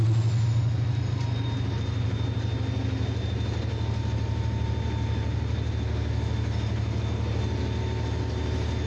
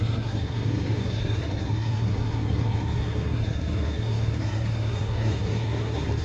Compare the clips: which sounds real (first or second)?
first